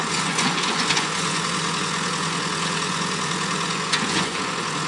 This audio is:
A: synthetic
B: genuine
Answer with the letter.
A